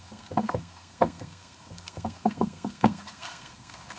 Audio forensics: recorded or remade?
remade